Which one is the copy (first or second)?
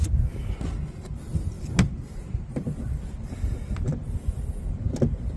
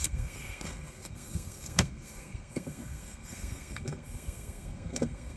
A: second